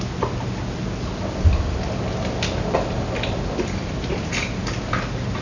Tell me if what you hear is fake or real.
real